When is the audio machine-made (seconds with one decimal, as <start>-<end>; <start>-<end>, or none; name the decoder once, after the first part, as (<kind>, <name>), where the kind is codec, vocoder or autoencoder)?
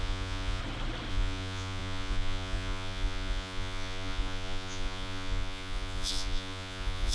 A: 0.0-0.6 (vocoder, Vocos); 1.1-7.1